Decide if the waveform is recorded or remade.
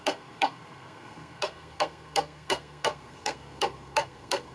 remade